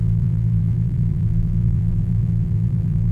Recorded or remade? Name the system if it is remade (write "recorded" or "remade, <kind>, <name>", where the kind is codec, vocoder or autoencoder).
remade, vocoder, BigVGAN v2